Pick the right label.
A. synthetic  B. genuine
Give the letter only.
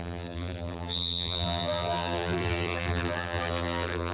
A